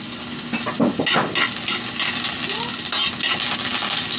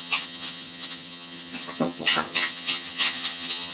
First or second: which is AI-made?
second